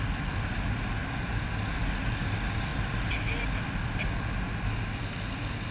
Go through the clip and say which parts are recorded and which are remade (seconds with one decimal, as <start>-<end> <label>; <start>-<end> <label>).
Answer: 0.0-5.7 recorded